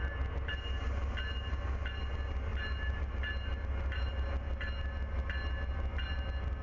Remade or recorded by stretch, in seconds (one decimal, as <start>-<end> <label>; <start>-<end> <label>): 0.0-6.6 recorded